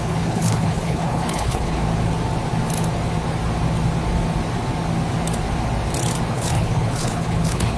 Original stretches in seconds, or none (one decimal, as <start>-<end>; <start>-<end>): 1.8-6.3